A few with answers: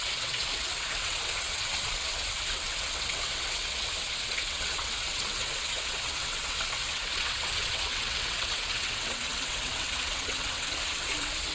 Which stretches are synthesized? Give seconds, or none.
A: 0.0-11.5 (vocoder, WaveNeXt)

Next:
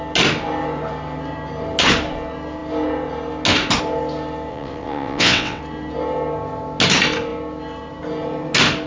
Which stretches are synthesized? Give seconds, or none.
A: 4.5-5.6 (vocoder, WaveNeXt)

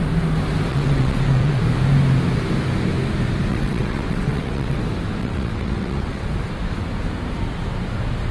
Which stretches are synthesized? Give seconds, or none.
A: 0.7-1.6 (vocoder, WaveNeXt); 3.5-4.8; 5.2-6.3

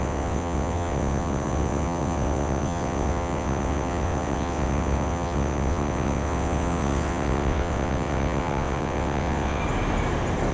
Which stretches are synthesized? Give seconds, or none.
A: 0.0-9.6 (vocoder, WaveNeXt)

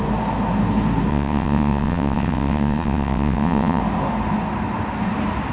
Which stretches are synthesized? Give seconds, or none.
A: 1.1-3.8 (vocoder, WaveNeXt)

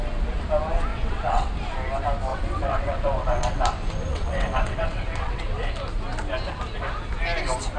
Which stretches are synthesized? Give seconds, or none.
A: 0.9-1.5 (vocoder, WaveNeXt); 2.3-3.6; 4.1-5.4

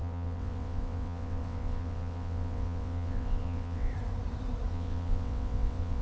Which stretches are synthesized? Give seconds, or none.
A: 0.0-3.9 (vocoder, WaveNeXt); 4.7-6.0